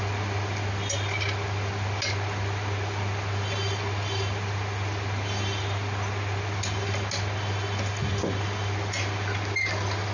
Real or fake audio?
real